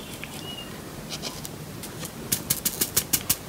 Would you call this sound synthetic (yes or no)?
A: no